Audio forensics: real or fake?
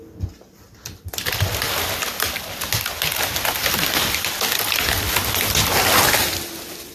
real